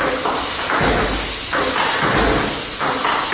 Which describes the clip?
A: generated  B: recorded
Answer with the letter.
B